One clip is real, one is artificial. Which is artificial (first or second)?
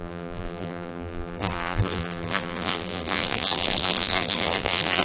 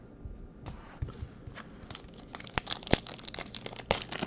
first